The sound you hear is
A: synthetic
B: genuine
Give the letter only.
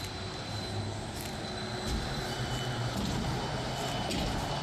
B